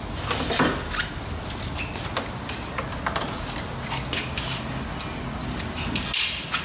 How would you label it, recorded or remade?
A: recorded